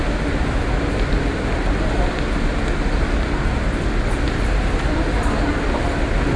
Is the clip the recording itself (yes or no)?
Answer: yes